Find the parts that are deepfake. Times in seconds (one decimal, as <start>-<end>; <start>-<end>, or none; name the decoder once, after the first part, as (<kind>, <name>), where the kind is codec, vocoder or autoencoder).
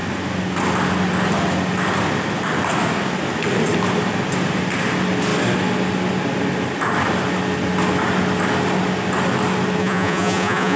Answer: 9.8-10.8 (vocoder, Vocos)